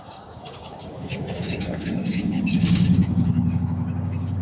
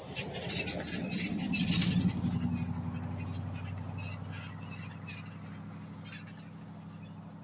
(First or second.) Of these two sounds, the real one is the second